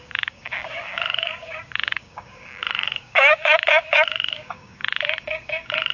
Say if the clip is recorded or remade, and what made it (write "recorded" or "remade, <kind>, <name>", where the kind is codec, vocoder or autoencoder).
remade, codec, DAC